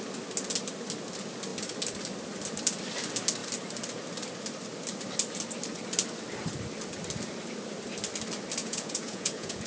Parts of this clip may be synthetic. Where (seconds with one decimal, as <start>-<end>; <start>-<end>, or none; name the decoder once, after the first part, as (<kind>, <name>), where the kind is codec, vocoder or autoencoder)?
8.6-9.7 (vocoder, Vocos)